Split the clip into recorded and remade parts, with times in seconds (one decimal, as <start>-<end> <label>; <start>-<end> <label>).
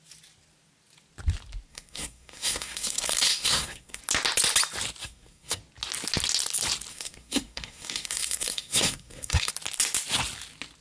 0.0-1.7 recorded; 1.7-4.0 remade; 4.0-5.0 recorded; 5.0-5.6 remade; 5.6-6.9 recorded; 6.9-9.5 remade; 9.5-10.8 recorded